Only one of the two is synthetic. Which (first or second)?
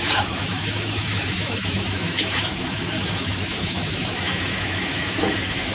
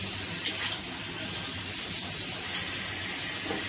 first